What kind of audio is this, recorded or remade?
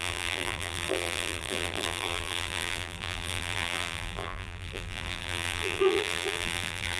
remade